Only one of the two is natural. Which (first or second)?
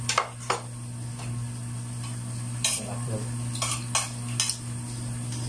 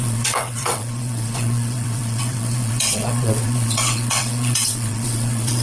first